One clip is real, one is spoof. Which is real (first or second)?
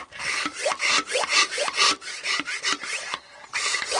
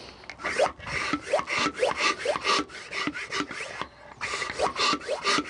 second